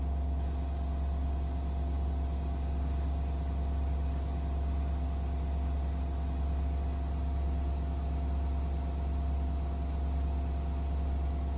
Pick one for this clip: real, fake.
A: real